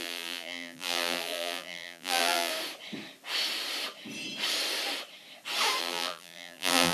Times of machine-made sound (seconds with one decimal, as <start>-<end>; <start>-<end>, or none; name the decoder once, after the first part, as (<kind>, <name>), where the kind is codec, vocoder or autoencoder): 0.0-2.5 (vocoder, BigVGAN v2); 5.8-6.9